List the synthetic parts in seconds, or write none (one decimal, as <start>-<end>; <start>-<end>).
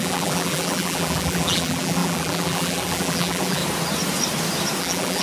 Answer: 0.0-3.6; 4.8-5.2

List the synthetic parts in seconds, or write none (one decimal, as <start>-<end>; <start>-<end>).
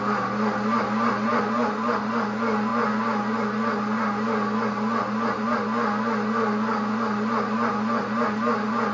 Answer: none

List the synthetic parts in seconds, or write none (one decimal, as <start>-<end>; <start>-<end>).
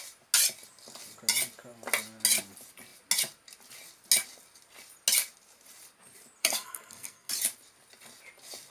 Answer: 6.4-7.3